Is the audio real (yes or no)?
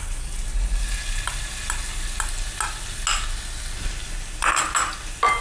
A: yes